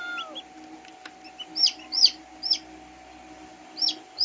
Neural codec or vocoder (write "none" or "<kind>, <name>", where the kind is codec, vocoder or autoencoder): none